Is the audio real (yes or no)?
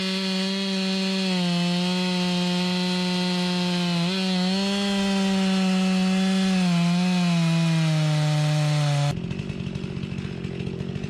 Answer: yes